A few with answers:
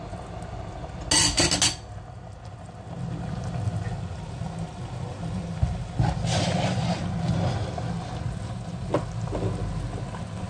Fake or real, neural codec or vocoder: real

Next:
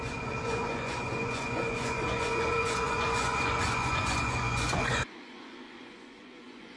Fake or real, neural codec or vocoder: fake, vocoder, Vocos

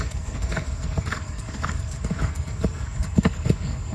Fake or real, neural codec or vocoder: fake, codec, SNAC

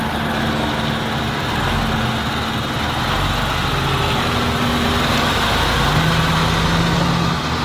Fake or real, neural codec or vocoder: real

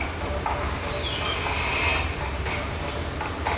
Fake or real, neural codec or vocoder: real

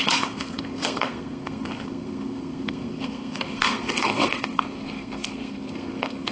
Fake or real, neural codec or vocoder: fake, codec, SNAC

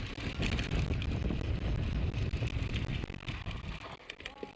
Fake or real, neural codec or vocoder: real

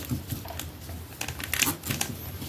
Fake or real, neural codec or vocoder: real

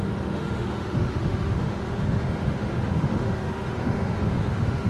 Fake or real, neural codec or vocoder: fake, autoencoder, DAC-VAE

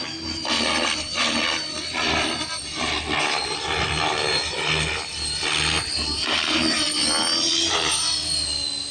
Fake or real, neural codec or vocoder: real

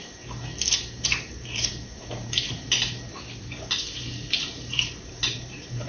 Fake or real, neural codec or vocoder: fake, vocoder, BigVGAN v2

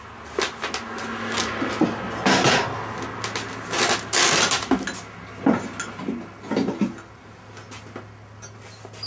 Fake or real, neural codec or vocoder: real